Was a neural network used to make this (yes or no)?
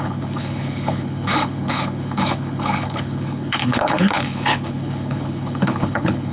yes